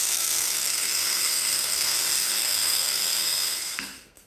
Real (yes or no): no